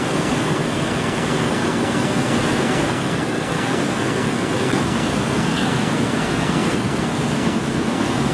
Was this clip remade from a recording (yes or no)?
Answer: yes